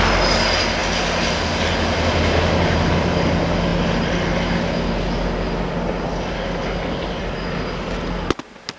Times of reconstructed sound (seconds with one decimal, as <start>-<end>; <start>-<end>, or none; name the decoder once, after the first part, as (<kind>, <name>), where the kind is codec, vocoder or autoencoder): none